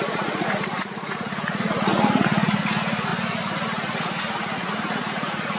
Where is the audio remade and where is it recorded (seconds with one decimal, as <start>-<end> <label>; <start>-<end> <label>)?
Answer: 0.0-3.1 remade; 3.1-4.2 recorded; 4.2-5.6 remade